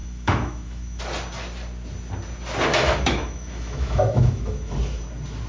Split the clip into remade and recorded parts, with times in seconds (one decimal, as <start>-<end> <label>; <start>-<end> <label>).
0.0-1.0 remade; 1.0-2.7 recorded; 2.7-4.7 remade; 4.7-5.5 recorded

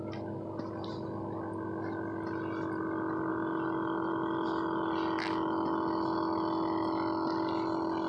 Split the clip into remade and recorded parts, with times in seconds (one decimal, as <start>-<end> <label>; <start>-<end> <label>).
0.0-8.1 recorded

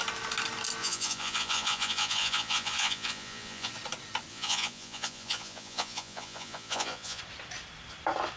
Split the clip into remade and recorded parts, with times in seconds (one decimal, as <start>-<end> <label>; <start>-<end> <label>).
0.0-0.8 recorded; 0.8-3.7 remade; 3.7-4.3 recorded; 4.3-7.2 remade; 7.2-8.4 recorded

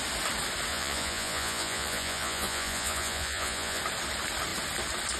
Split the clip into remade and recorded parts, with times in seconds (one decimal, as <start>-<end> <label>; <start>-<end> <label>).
0.0-0.7 recorded; 0.7-3.8 remade; 3.8-5.2 recorded

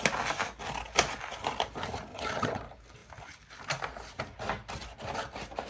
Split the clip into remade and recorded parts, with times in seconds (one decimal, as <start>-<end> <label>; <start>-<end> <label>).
0.0-2.1 recorded; 2.1-2.6 remade; 2.6-5.7 recorded

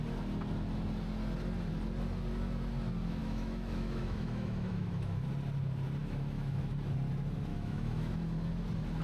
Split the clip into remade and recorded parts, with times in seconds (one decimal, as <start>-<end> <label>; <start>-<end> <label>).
0.0-3.2 recorded; 3.2-5.3 remade; 5.3-6.0 recorded; 6.0-6.7 remade; 6.7-7.5 recorded; 7.5-8.1 remade; 8.1-9.0 recorded

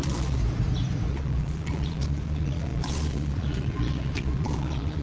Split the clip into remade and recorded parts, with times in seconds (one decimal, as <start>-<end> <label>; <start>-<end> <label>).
0.0-0.4 remade; 0.4-1.1 recorded; 1.1-5.0 remade

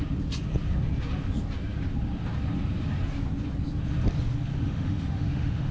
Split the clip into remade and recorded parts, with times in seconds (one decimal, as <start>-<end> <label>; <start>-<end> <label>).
0.0-4.5 recorded; 4.5-5.7 remade